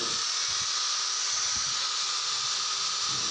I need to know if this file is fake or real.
real